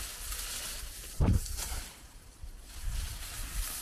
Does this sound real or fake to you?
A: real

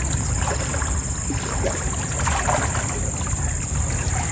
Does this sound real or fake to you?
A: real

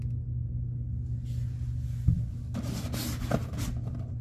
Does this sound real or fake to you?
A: real